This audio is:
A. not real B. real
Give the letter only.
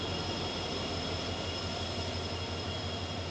B